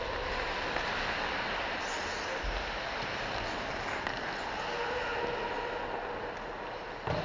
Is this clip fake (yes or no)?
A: no